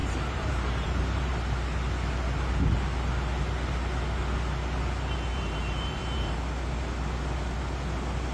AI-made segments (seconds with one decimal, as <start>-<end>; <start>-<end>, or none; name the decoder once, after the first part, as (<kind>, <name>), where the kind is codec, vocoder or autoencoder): 0.0-1.3 (vocoder, BigVGAN v2); 5.3-6.4